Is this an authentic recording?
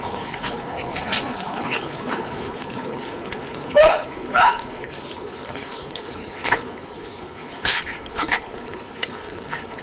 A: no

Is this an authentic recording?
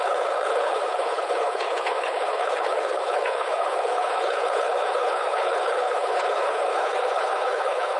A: no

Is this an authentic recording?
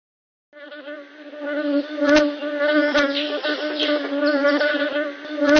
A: yes